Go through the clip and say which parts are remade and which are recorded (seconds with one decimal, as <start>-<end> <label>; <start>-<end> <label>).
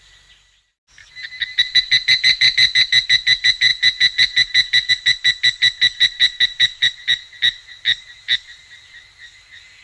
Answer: 0.0-9.8 recorded